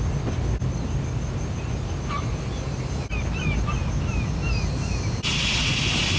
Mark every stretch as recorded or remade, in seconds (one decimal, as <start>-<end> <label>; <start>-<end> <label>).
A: 0.0-6.2 recorded